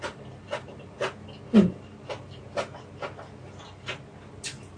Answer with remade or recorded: recorded